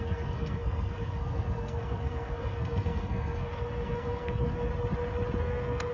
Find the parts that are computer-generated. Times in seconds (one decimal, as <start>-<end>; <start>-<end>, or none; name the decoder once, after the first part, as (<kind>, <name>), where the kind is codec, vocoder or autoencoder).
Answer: 0.0-4.7 (codec, SNAC); 5.4-5.9